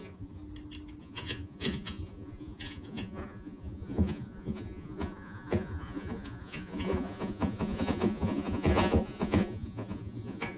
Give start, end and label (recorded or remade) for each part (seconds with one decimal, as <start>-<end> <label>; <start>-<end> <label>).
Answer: 0.0-0.4 remade; 0.4-1.0 recorded; 1.0-10.6 remade